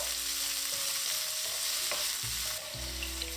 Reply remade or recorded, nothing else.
recorded